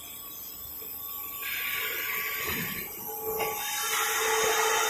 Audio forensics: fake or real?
real